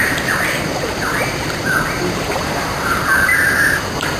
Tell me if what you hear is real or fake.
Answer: fake